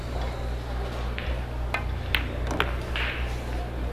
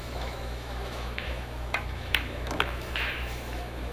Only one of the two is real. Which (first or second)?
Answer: first